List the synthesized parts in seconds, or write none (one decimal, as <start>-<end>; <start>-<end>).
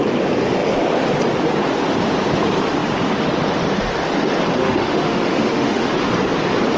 4.6-5.9